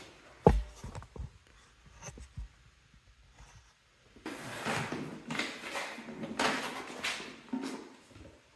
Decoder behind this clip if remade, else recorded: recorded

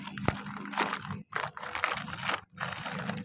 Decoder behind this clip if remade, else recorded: recorded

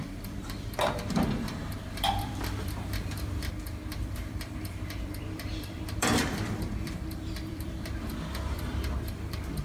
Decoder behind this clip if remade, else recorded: remade, vocoder, BigVGAN v2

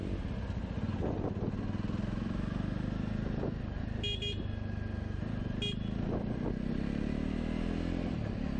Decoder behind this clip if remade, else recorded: recorded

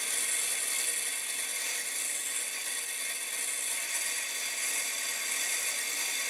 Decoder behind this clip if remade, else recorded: recorded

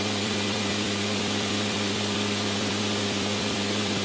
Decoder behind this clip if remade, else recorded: remade, vocoder, BigVGAN v2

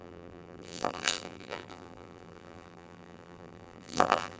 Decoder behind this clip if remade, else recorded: remade, vocoder, BigVGAN v2